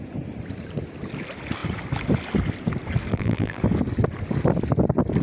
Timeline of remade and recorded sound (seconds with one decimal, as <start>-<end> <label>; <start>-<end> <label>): 0.0-3.1 recorded; 3.1-3.6 remade; 3.6-5.2 recorded